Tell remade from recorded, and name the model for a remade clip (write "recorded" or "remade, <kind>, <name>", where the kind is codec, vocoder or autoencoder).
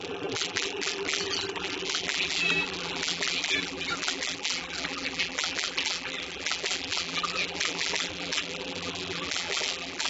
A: remade, vocoder, BigVGAN v2